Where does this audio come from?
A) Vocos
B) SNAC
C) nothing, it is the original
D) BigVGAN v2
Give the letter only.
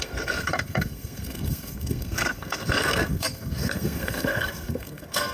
B